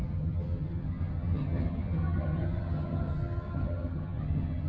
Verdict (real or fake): fake